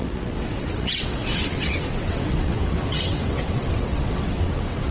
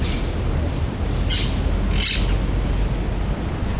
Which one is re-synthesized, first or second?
first